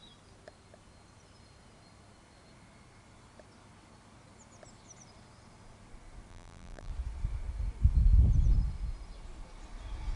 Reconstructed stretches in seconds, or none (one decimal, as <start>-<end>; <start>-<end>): 6.3-6.9